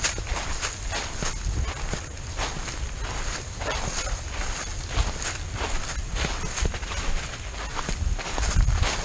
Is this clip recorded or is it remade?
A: recorded